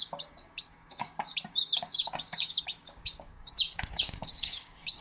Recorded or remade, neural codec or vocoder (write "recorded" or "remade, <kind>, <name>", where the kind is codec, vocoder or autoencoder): remade, codec, DAC